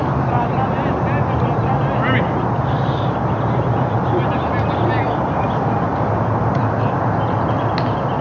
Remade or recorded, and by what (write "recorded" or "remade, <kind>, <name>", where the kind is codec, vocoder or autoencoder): recorded